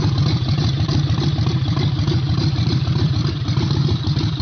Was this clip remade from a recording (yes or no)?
yes